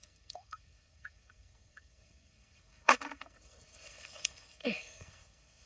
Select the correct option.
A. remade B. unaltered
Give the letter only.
A